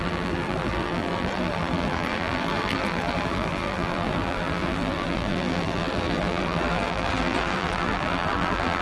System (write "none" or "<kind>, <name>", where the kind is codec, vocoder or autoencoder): vocoder, BigVGAN v2